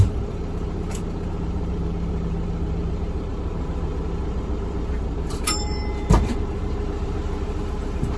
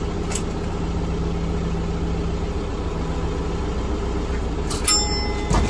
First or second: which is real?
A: second